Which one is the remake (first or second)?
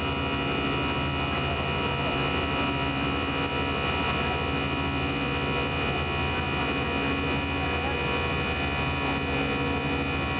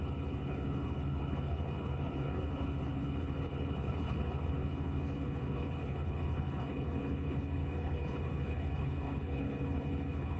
second